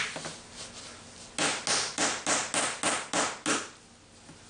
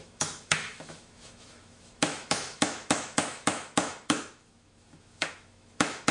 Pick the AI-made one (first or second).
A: second